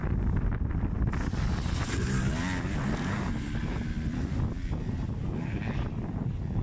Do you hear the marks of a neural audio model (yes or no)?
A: no